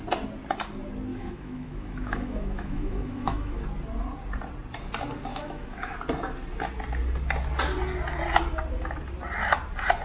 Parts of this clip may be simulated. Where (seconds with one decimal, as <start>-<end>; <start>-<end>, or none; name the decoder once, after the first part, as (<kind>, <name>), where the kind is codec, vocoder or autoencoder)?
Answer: 1.1-3.6 (autoencoder, DAC-VAE); 5.3-5.9